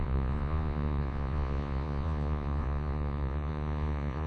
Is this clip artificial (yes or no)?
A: yes